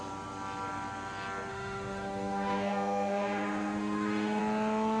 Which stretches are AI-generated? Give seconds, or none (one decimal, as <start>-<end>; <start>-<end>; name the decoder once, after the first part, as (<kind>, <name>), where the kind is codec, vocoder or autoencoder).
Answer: 1.5-4.4 (autoencoder, DAC-VAE)